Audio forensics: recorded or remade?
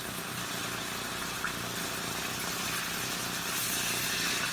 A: recorded